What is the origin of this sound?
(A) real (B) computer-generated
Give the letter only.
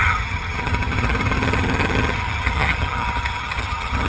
B